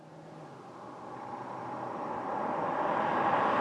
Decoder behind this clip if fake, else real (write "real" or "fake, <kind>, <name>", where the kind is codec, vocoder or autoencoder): real